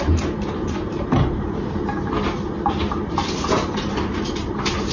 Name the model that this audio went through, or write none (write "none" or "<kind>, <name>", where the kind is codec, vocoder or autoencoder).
none